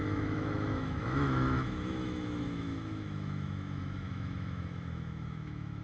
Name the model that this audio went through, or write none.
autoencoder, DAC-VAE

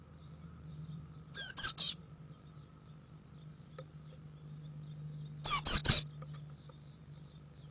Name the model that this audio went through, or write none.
none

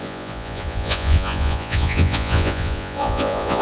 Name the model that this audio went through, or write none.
vocoder, Vocos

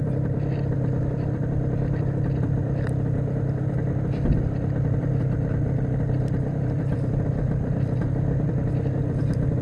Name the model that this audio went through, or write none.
vocoder, BigVGAN v2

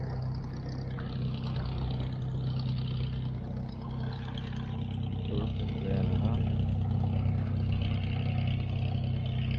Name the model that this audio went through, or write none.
none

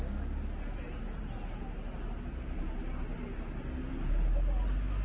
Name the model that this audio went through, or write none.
none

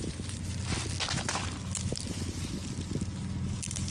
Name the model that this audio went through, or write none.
none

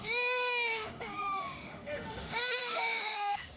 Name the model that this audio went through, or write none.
autoencoder, DAC-VAE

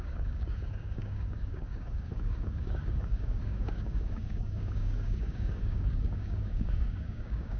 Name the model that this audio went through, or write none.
codec, DAC